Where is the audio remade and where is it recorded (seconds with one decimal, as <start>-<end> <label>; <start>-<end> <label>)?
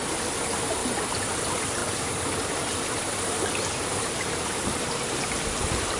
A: 0.0-6.0 recorded